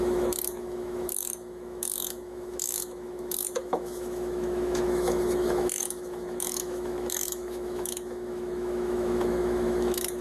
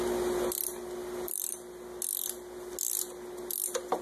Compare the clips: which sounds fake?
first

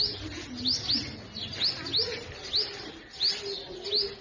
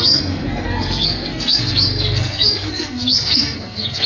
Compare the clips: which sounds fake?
second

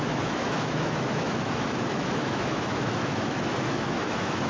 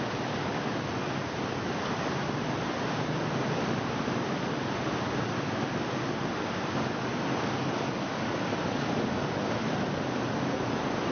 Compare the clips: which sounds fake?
first